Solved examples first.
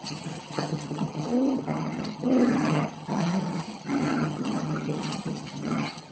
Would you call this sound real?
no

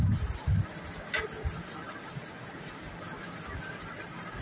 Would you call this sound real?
yes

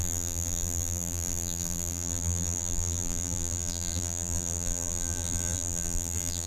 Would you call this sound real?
no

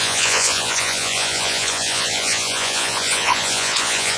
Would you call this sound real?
no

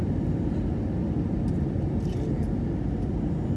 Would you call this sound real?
yes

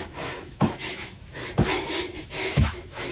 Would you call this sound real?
no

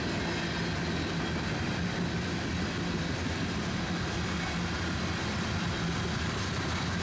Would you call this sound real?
yes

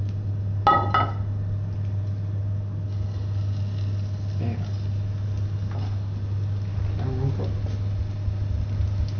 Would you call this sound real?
yes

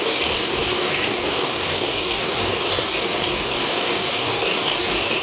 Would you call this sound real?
no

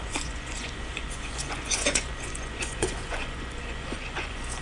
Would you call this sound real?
no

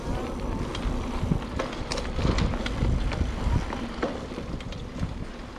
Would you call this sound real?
yes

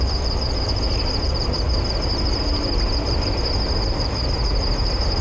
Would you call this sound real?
yes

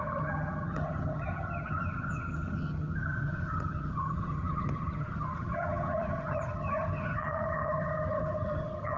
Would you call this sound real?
no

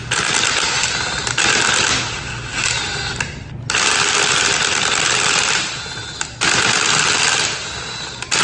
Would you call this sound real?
yes